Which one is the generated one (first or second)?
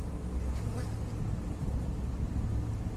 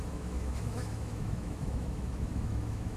second